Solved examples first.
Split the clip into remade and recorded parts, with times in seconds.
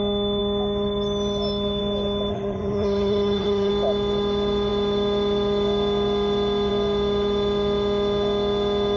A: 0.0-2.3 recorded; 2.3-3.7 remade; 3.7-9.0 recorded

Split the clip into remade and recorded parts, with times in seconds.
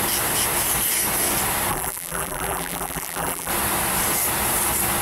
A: 0.0-1.7 recorded; 1.7-3.5 remade; 3.5-5.0 recorded